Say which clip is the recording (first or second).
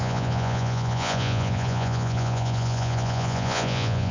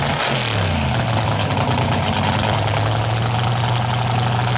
second